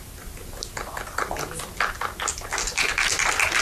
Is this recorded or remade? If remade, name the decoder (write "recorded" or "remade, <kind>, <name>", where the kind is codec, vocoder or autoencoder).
recorded